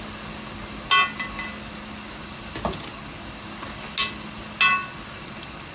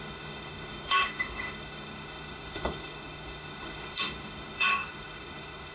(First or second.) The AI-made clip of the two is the second